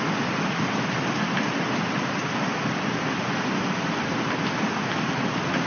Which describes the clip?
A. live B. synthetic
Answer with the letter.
A